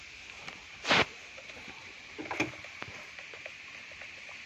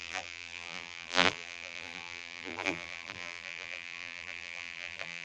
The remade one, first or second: second